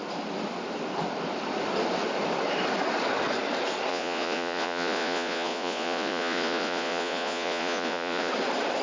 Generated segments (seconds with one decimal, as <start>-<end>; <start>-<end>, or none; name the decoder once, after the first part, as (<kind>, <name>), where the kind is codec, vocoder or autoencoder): 3.9-8.3 (vocoder, Vocos)

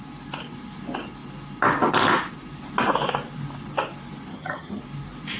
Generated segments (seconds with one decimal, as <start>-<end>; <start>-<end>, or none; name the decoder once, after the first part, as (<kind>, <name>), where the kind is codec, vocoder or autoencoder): 4.3-4.8 (vocoder, HiFi-GAN)

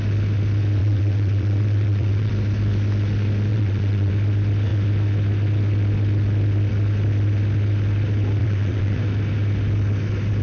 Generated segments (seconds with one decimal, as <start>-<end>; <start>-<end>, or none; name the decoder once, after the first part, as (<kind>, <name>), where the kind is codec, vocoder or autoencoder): 0.8-2.3 (vocoder, WaveNeXt); 3.5-4.1; 8.4-9.0

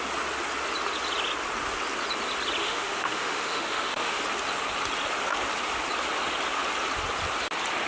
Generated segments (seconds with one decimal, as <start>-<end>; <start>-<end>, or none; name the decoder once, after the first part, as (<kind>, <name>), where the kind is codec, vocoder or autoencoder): 2.6-4.2 (autoencoder, DAC-VAE)

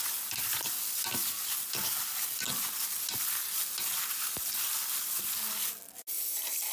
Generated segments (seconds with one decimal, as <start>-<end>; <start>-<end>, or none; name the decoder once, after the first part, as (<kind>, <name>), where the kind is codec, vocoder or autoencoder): none

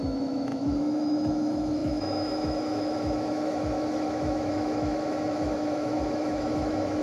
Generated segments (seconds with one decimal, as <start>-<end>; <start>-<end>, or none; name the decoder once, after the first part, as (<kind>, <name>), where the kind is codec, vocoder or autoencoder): 0.0-7.0 (autoencoder, DAC-VAE)

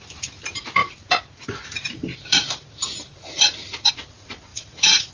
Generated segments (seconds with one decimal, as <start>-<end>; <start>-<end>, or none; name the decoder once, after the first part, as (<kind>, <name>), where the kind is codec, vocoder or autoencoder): 0.8-3.9 (vocoder, BigVGAN v2); 4.5-5.1